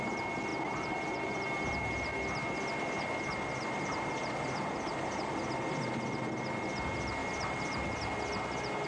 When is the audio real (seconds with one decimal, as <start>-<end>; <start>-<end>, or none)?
0.0-8.9